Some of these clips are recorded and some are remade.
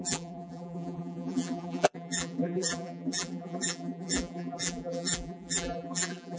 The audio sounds remade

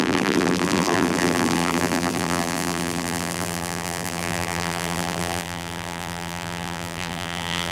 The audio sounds remade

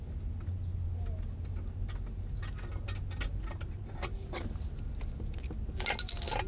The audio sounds recorded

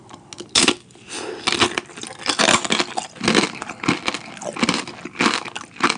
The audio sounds recorded